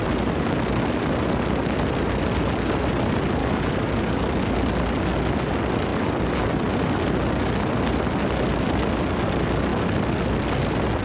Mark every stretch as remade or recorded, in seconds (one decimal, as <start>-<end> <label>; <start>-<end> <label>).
0.0-3.4 recorded; 3.4-4.2 remade; 4.2-11.0 recorded